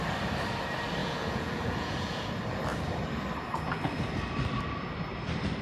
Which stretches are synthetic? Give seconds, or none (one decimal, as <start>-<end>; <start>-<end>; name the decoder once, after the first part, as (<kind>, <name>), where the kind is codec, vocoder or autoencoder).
1.0-2.3 (vocoder, Vocos)